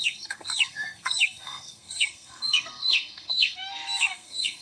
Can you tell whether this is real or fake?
fake